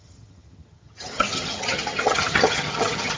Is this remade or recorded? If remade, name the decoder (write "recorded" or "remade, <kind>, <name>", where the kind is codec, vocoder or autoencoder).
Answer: remade, vocoder, HiFi-GAN